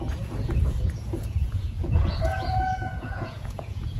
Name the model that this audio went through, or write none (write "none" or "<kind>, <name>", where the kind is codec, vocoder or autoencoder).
vocoder, Vocos